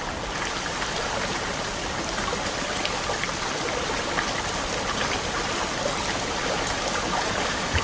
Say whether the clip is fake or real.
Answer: real